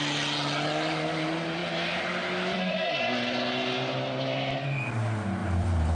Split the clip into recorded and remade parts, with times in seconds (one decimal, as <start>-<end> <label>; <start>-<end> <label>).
0.0-5.4 recorded; 5.4-5.9 remade